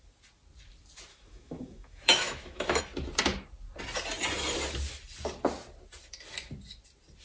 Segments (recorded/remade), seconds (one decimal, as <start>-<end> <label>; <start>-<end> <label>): 0.0-1.1 recorded; 1.1-2.8 remade; 2.8-7.2 recorded